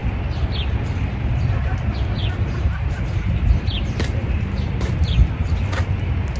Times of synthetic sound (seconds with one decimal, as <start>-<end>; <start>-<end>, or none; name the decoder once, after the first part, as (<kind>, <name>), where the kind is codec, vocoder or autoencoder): 2.2-5.2 (vocoder, BigVGAN v2)